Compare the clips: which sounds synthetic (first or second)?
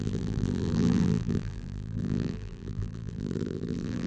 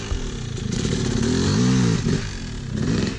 first